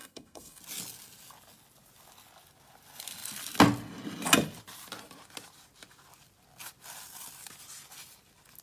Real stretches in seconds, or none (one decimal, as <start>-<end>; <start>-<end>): 0.6-8.6